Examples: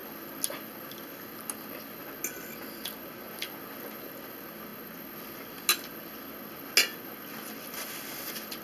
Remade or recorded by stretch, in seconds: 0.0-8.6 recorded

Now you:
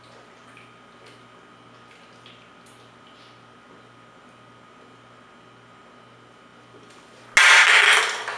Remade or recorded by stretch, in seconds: 0.0-8.4 recorded

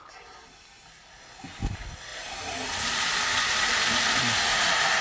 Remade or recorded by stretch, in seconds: 0.0-5.0 recorded

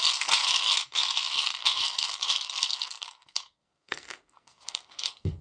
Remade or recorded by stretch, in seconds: 0.0-5.4 remade

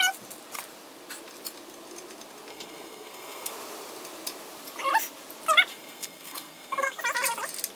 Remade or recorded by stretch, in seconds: 0.0-2.5 recorded; 2.5-3.5 remade; 3.5-5.7 recorded; 5.7-7.0 remade; 7.0-7.8 recorded

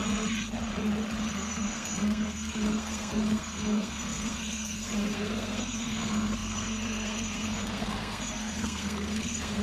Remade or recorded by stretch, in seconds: 0.0-1.3 recorded; 1.3-9.6 remade

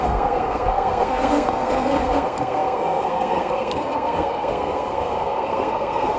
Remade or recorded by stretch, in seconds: 0.0-6.2 remade

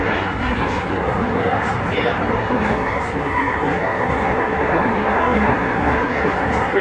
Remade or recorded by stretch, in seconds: 0.0-1.8 remade; 1.8-2.3 recorded; 2.3-6.8 remade